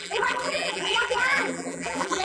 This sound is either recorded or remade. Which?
remade